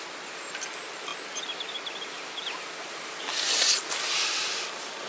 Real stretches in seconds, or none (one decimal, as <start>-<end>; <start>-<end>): 0.0-5.1